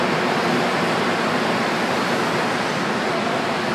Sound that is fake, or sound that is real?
real